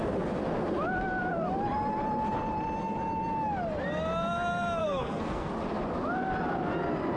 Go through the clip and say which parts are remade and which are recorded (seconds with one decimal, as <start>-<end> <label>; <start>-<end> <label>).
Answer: 0.0-4.8 recorded; 4.8-5.5 remade; 5.5-7.2 recorded